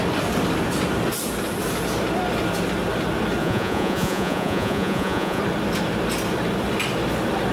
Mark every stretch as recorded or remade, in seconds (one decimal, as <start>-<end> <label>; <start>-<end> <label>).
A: 0.0-3.4 recorded; 3.4-5.4 remade; 5.4-7.5 recorded

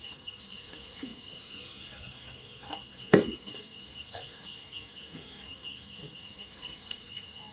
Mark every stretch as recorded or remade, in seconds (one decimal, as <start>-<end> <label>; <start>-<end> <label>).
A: 0.0-7.5 remade

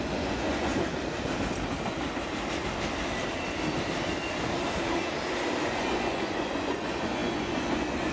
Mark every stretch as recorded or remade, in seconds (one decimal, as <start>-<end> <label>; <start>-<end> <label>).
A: 0.0-0.7 remade; 0.7-5.6 recorded; 5.6-8.1 remade

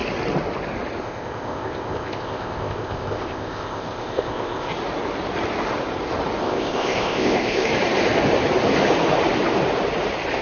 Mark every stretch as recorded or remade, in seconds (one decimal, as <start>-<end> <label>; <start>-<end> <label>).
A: 0.0-1.0 recorded; 1.0-4.7 remade; 4.7-6.4 recorded; 6.4-7.7 remade; 7.7-10.4 recorded

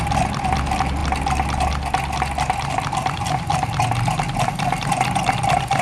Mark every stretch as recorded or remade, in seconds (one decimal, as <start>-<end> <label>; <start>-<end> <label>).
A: 0.0-5.8 recorded

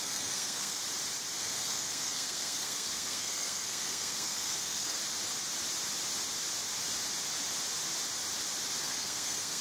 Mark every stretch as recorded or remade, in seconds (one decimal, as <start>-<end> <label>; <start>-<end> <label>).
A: 0.0-0.8 remade; 0.8-1.4 recorded; 1.4-5.0 remade; 5.0-8.8 recorded; 8.8-9.6 remade

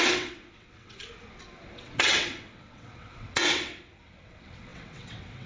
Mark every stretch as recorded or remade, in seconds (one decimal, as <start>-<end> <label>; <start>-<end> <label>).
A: 0.0-1.0 remade; 1.0-1.7 recorded; 1.7-5.5 remade

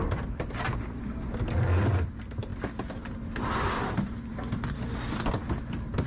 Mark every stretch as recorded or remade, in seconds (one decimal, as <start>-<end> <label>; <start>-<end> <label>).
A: 0.0-6.1 recorded